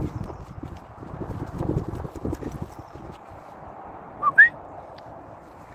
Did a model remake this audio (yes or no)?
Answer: no